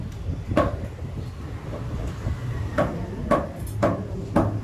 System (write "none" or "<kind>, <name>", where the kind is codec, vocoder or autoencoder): none